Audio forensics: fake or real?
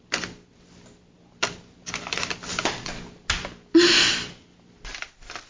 real